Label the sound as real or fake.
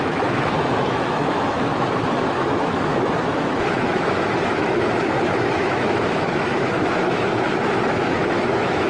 fake